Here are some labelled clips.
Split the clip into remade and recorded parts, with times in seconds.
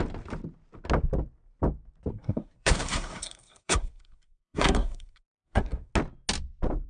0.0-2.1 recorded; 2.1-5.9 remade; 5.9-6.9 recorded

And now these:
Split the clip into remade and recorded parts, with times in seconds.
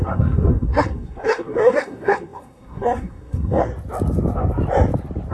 0.0-3.7 remade; 3.7-5.3 recorded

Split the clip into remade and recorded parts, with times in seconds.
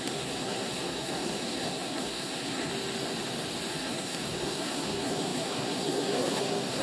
0.0-2.7 remade; 2.7-3.7 recorded; 3.7-6.8 remade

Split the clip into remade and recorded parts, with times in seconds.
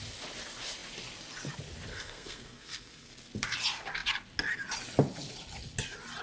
0.0-1.9 recorded; 1.9-3.1 remade; 3.1-6.2 recorded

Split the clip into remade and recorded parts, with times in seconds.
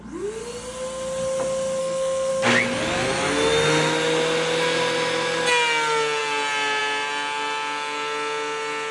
0.0-1.8 recorded; 1.8-2.3 remade; 2.3-8.9 recorded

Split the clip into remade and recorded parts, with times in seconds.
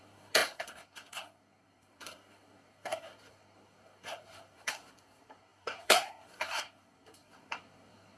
0.0-8.2 remade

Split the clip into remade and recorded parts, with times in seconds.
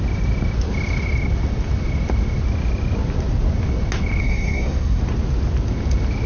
0.0-4.2 recorded; 4.2-5.0 remade; 5.0-6.3 recorded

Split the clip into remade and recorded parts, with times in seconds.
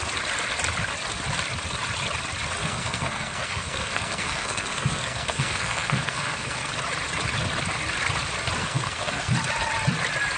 0.0-2.6 recorded; 2.6-6.7 remade; 6.7-8.6 recorded; 8.6-9.3 remade; 9.3-10.4 recorded